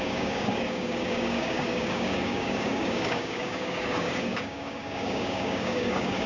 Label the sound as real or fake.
fake